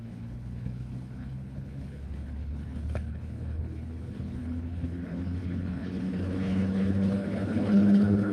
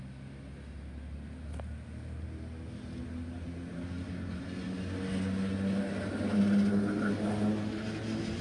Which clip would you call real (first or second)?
second